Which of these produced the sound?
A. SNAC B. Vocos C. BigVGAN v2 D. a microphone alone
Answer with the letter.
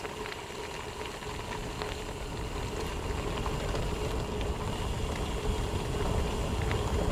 D